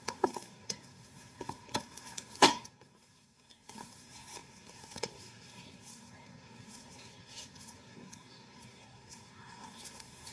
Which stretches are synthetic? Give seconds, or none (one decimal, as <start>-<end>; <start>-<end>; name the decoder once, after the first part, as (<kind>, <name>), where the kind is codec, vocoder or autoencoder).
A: 0.0-10.3 (codec, SNAC)